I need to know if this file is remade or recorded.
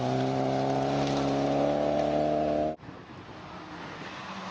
recorded